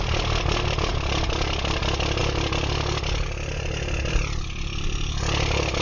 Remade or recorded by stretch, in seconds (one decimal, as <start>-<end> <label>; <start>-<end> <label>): 0.0-5.8 recorded